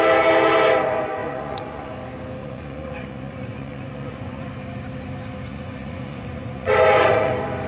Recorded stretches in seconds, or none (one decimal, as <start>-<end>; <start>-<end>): 0.0-1.2; 1.9-2.4; 4.5-5.5; 7.3-7.7